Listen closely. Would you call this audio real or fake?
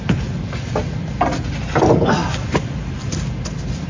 real